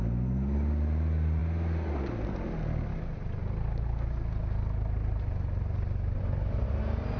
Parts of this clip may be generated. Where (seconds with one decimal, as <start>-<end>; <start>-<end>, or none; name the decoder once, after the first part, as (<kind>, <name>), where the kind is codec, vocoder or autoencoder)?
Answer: none